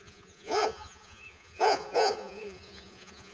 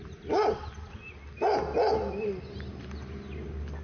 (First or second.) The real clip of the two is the second